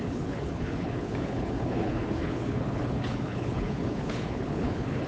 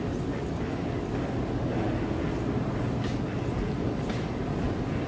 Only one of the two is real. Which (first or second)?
second